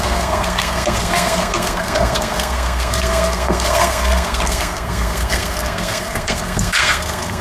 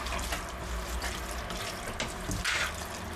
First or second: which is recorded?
second